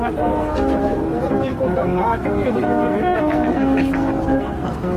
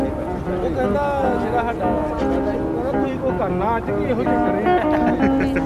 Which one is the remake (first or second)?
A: first